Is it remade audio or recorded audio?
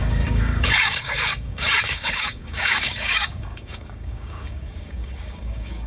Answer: remade